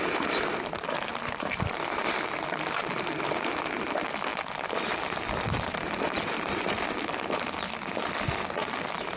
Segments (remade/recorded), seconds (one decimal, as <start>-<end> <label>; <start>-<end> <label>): 0.0-4.3 remade; 4.3-4.9 recorded; 4.9-9.2 remade